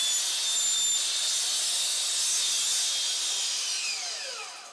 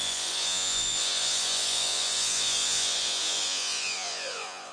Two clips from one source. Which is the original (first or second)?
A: first